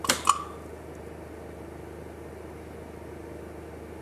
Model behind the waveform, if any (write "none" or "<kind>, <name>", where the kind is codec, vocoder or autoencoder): none